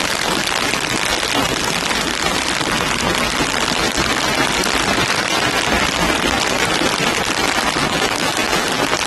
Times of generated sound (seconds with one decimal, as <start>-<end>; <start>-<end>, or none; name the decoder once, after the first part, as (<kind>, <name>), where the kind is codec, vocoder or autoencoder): 7.8-8.7 (autoencoder, DAC-VAE)